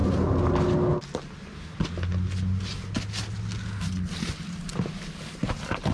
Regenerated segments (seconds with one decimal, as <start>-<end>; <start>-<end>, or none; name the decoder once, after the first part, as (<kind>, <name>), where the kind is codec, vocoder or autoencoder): 0.0-0.5 (vocoder, BigVGAN v2)